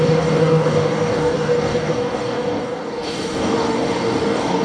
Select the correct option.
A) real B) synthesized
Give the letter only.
B